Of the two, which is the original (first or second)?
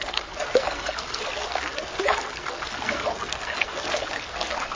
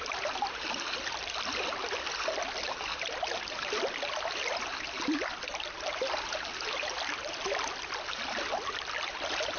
second